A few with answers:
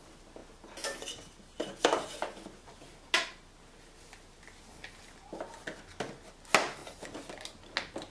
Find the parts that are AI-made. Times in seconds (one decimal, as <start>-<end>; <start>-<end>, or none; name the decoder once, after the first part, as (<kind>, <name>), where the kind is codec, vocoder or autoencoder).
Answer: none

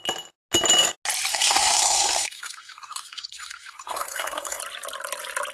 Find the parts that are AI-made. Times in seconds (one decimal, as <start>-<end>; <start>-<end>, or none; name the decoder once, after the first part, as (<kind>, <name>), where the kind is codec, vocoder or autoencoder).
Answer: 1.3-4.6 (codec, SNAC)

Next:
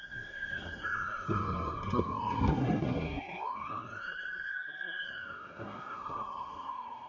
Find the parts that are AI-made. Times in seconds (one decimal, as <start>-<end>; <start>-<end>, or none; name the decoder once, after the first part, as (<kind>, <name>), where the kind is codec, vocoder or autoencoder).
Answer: 0.0-7.1 (codec, SNAC)